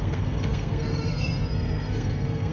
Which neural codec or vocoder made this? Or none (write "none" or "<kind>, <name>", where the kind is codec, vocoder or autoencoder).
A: codec, SNAC